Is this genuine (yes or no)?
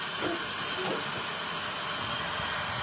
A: yes